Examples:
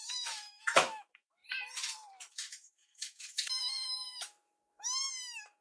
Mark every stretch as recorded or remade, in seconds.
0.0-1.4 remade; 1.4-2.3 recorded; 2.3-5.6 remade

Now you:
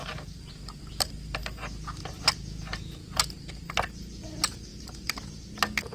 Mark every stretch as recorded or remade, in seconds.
0.0-1.1 remade; 1.1-4.7 recorded; 4.7-5.4 remade; 5.4-5.9 recorded

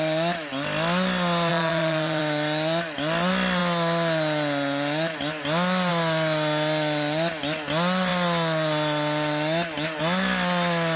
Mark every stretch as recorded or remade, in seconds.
0.0-1.5 recorded; 1.5-2.2 remade; 2.2-11.0 recorded